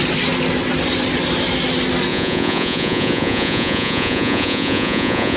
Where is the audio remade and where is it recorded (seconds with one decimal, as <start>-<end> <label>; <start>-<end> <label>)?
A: 0.0-2.1 recorded; 2.1-5.4 remade